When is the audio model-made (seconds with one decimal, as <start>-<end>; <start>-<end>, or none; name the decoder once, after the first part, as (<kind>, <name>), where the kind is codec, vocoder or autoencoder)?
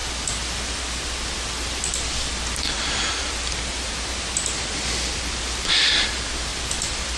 0.0-3.3 (vocoder, BigVGAN v2); 6.5-7.2